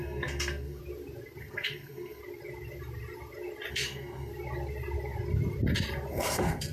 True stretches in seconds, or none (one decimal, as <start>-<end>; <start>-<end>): 0.8-1.4; 2.2-3.7; 4.3-6.1

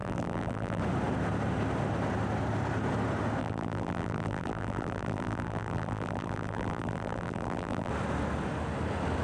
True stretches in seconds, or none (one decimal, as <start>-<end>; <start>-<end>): 0.8-3.4; 7.9-9.2

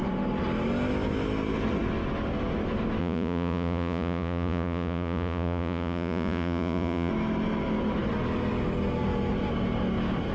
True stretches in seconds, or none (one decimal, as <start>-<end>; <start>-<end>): 0.0-3.0; 7.1-10.3

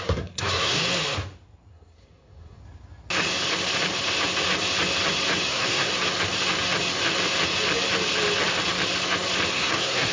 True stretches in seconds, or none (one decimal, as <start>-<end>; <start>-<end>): 0.8-1.7; 2.6-5.5; 5.9-9.5

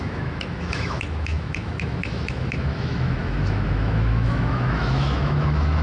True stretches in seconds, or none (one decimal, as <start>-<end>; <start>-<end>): none

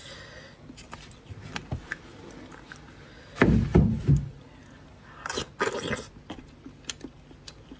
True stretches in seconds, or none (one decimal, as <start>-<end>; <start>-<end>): 0.0-7.8

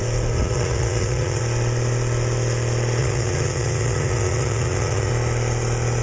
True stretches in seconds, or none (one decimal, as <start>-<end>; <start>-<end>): 0.0-0.4; 1.4-3.0; 5.1-6.0

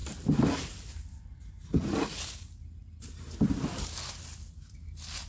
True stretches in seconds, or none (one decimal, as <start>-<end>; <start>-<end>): 0.0-5.3